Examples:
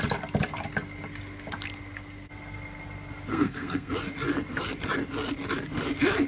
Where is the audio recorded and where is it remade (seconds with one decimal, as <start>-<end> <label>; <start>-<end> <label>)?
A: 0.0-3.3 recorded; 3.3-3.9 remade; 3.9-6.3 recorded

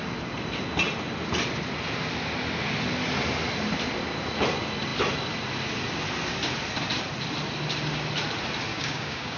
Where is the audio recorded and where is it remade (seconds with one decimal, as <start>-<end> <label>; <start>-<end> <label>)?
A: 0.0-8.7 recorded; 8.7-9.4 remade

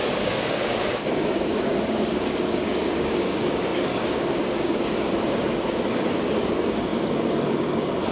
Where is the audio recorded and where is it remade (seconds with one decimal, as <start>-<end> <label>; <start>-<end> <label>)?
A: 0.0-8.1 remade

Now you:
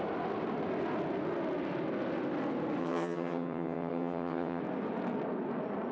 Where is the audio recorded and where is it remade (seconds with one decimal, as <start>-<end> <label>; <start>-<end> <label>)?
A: 0.0-2.8 recorded; 2.8-4.6 remade; 4.6-5.9 recorded